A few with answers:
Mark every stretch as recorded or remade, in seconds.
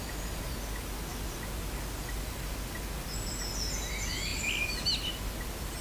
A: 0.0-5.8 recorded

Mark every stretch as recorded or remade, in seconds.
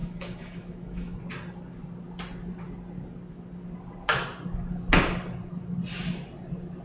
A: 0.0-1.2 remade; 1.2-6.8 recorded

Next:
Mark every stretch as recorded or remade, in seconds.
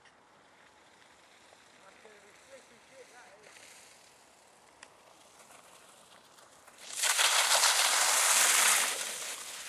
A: 0.0-5.2 recorded; 5.2-8.6 remade; 8.6-9.7 recorded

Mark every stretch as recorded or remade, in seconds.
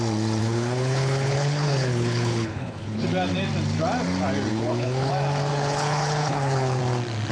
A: 0.0-0.4 recorded; 0.4-3.0 remade; 3.0-4.5 recorded; 4.5-5.1 remade; 5.1-5.5 recorded; 5.5-6.8 remade; 6.8-7.3 recorded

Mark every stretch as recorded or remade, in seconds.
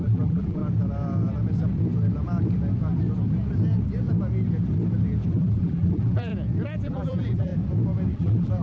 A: 0.0-0.6 remade; 0.6-5.3 recorded; 5.3-6.3 remade; 6.3-6.8 recorded; 6.8-7.5 remade; 7.5-8.1 recorded; 8.1-8.6 remade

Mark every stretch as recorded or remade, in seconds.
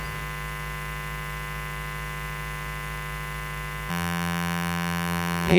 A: 0.0-3.9 recorded; 3.9-5.6 remade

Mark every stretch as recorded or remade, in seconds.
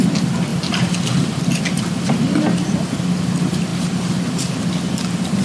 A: 0.0-5.4 recorded